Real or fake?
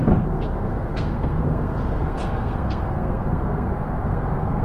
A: fake